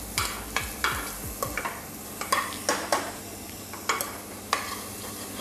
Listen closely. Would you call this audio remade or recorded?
recorded